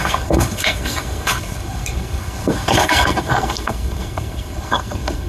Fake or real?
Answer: fake